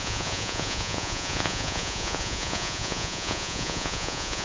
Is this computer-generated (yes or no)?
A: yes